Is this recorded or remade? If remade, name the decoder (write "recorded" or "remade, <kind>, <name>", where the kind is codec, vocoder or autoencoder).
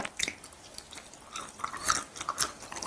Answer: recorded